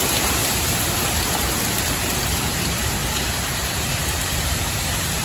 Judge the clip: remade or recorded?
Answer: remade